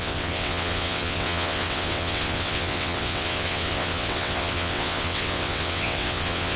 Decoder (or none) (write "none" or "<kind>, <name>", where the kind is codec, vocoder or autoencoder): vocoder, WaveNeXt